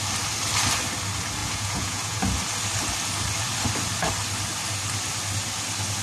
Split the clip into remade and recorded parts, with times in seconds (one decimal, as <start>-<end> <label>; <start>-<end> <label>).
0.0-1.4 recorded; 1.4-2.2 remade; 2.2-6.0 recorded